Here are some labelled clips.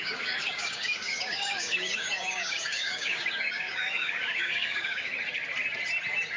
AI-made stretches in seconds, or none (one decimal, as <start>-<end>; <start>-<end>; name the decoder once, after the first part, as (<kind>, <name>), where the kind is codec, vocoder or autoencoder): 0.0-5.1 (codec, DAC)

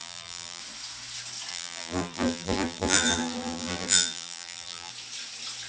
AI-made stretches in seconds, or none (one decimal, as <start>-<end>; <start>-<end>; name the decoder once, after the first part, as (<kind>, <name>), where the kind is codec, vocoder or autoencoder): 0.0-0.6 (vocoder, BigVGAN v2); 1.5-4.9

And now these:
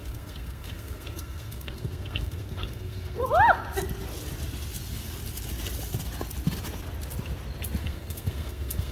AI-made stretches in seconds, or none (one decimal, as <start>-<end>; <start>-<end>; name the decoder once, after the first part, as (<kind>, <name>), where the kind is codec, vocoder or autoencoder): 0.0-3.2 (codec, SNAC); 7.8-8.9